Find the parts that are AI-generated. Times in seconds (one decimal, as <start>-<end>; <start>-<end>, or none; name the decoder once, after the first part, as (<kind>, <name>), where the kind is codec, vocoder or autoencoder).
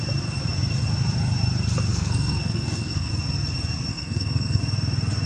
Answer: 1.9-3.1 (codec, SNAC); 3.9-4.6